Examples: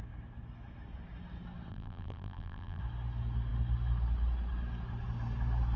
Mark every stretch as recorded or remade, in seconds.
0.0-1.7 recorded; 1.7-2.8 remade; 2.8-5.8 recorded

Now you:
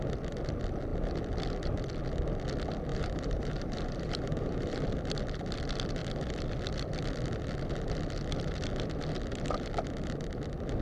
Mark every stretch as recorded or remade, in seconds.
0.0-2.9 recorded; 2.9-4.8 remade; 4.8-10.8 recorded

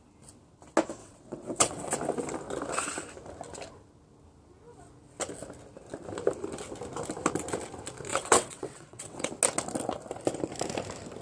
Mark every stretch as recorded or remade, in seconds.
0.0-1.0 recorded; 1.0-1.9 remade; 1.9-8.1 recorded; 8.1-9.3 remade; 9.3-11.2 recorded

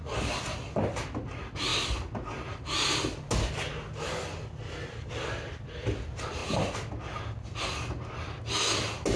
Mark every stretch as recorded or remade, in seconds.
0.0-9.2 recorded

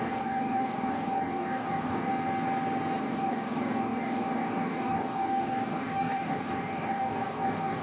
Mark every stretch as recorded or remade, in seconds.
0.0-2.1 remade; 2.1-3.0 recorded; 3.0-7.8 remade

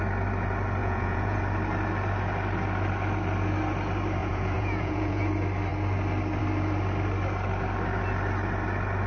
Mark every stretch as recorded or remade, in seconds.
0.0-0.8 recorded; 0.8-1.4 remade; 1.4-4.2 recorded; 4.2-5.2 remade; 5.2-9.1 recorded

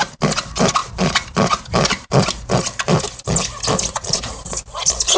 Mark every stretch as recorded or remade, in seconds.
0.0-5.2 recorded

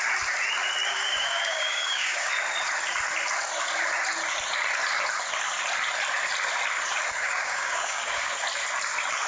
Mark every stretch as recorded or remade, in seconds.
0.0-0.9 recorded; 0.9-2.3 remade; 2.3-7.2 recorded; 7.2-8.3 remade; 8.3-9.3 recorded